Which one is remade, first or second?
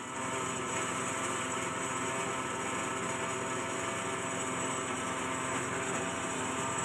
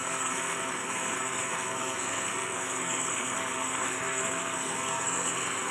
second